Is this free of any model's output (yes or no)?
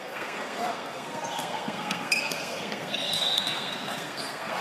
no